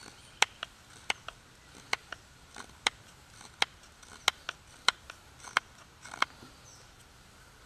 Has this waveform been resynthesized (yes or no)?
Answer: no